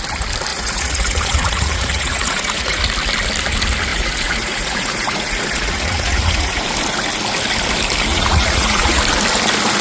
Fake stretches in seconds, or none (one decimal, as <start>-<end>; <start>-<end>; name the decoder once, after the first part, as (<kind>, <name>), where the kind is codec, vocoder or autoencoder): 0.5-2.8 (vocoder, Vocos); 3.9-6.6; 8.1-9.0